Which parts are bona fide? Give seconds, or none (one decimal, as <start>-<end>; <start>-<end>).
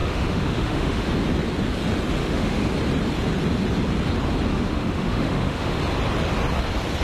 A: 1.1-2.2; 2.7-4.5; 5.8-7.0